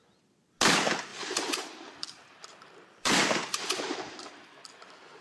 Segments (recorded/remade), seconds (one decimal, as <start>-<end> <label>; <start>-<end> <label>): 0.0-1.1 recorded; 1.1-4.2 remade; 4.2-5.2 recorded